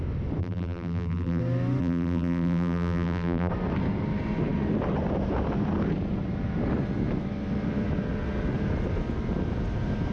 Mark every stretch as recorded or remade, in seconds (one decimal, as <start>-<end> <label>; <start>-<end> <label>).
0.0-0.4 recorded; 0.4-1.4 remade; 1.4-1.8 recorded; 1.8-3.5 remade; 3.5-10.1 recorded